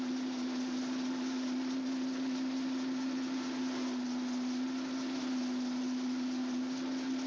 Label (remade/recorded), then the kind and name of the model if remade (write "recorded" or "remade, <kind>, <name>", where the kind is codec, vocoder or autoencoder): recorded